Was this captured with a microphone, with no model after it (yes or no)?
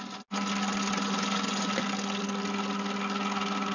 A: yes